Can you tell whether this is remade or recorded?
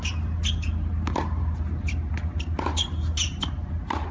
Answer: recorded